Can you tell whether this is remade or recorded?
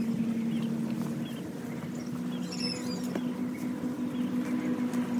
recorded